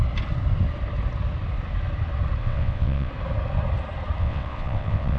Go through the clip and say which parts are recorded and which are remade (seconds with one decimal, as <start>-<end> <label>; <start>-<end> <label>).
0.0-2.4 recorded; 2.4-3.1 remade; 3.1-4.2 recorded; 4.2-5.2 remade